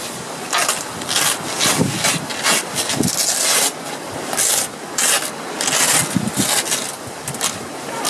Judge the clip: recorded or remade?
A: recorded